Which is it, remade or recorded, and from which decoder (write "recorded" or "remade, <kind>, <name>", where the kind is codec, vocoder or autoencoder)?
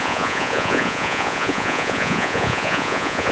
remade, vocoder, Vocos